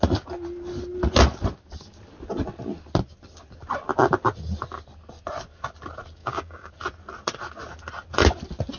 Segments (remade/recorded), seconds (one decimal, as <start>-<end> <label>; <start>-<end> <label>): 0.0-6.2 recorded; 6.2-6.7 remade; 6.7-8.8 recorded

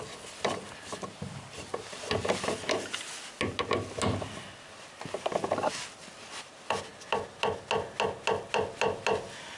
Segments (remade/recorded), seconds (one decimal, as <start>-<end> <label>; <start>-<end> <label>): 0.0-9.6 recorded

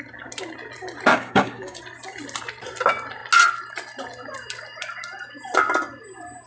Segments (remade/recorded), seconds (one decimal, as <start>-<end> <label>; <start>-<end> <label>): 0.0-1.1 recorded; 1.1-1.8 remade; 1.8-6.5 recorded

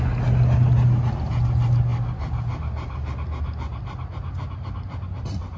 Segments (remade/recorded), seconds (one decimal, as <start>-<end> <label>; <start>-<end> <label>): 0.0-5.6 recorded

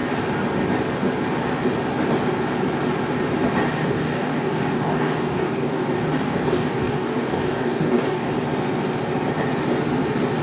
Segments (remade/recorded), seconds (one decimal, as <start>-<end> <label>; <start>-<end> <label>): 0.0-3.8 recorded; 3.8-8.3 remade; 8.3-10.4 recorded

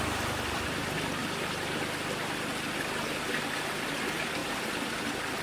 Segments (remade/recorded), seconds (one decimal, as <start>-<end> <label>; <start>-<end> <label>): 0.0-5.4 recorded

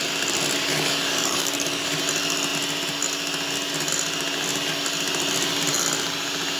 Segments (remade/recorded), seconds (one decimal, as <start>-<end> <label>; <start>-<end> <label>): 0.0-0.7 recorded; 0.7-2.0 remade; 2.0-6.6 recorded

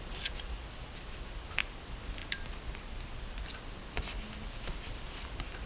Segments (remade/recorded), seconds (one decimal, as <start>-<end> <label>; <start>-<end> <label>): 0.0-5.7 recorded